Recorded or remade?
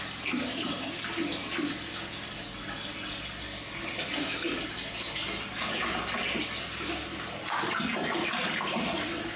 recorded